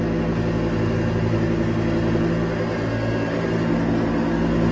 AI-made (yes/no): no